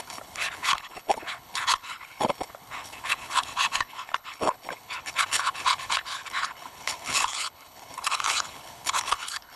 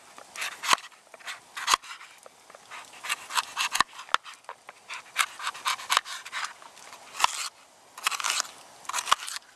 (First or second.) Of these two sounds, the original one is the second